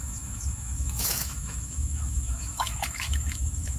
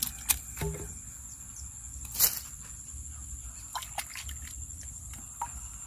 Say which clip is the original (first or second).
second